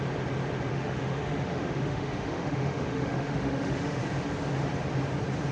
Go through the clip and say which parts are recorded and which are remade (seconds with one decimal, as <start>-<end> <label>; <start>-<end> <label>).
0.0-0.7 recorded; 0.7-4.0 remade; 4.0-5.5 recorded